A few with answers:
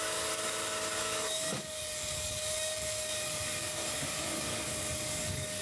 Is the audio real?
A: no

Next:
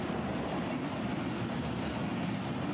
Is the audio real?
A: yes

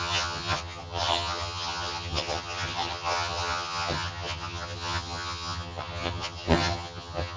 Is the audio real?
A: no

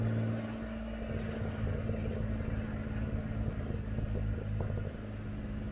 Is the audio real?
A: yes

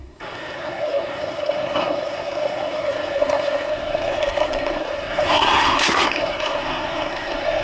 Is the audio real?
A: no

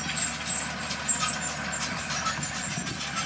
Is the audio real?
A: yes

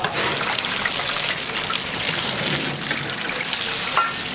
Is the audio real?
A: yes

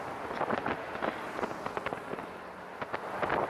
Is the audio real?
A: yes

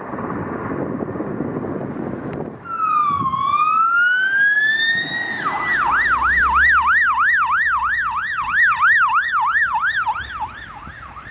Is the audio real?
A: yes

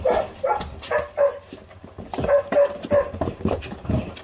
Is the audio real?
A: no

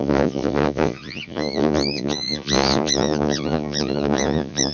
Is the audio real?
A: no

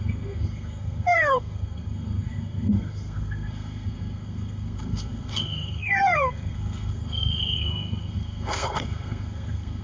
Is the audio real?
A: no